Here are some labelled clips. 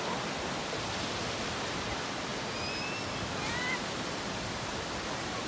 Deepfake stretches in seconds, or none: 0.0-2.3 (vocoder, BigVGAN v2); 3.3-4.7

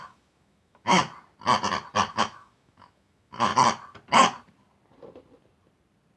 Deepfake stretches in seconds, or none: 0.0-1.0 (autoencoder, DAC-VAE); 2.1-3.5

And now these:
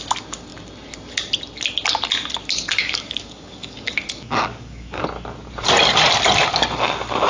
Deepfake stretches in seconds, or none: 2.8-5.0 (codec, DAC)

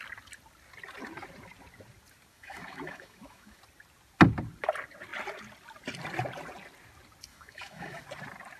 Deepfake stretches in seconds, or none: 2.3-3.6 (autoencoder, DAC-VAE); 7.3-8.0